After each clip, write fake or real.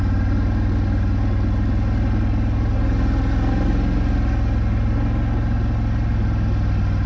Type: real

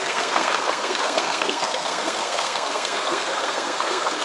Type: fake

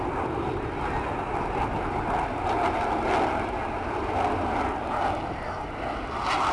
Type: real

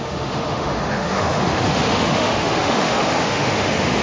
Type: fake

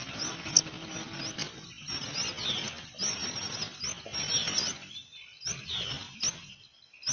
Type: real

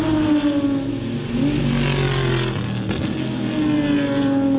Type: real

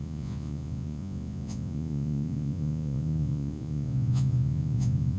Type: fake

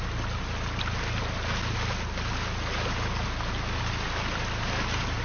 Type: real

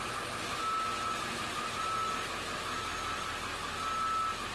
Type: real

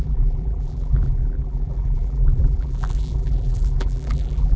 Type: fake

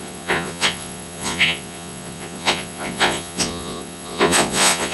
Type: fake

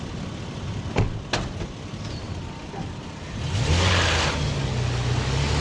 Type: real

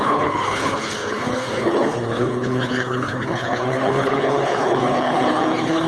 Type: fake